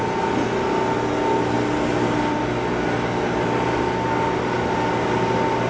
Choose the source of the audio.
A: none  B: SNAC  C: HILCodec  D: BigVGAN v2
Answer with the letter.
A